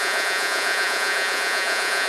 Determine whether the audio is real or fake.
fake